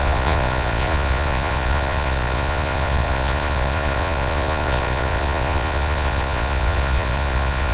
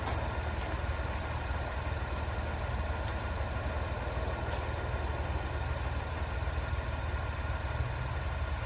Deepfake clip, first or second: first